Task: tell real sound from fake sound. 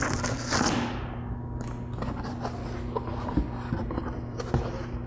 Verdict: real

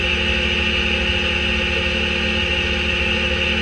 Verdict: real